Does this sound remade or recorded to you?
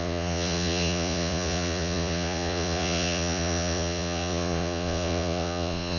remade